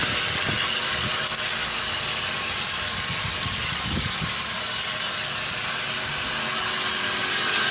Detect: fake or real real